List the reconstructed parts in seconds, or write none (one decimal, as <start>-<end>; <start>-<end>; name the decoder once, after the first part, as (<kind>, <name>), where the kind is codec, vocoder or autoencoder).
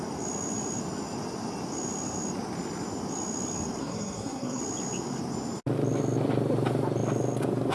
3.8-4.6 (codec, SNAC)